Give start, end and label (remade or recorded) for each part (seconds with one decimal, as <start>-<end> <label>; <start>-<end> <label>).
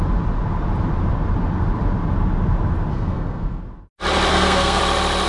0.0-2.9 recorded; 2.9-3.6 remade; 3.6-4.3 recorded; 4.3-4.8 remade; 4.8-5.3 recorded